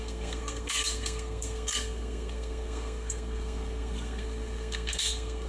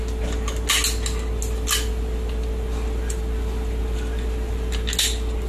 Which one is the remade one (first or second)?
first